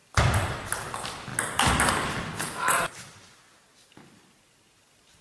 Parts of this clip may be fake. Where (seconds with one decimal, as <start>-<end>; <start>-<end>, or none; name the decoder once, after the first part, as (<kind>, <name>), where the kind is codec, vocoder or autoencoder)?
none